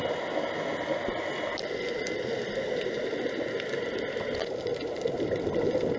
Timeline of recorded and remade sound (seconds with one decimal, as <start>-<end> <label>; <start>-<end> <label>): 0.0-6.0 recorded